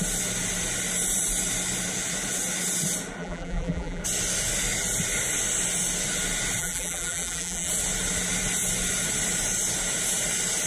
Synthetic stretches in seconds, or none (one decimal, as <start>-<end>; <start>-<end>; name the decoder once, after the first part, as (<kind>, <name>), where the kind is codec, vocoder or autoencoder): 3.2-4.0 (vocoder, BigVGAN v2); 6.6-7.7